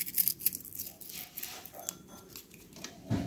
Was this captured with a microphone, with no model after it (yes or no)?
yes